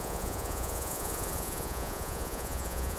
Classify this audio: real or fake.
fake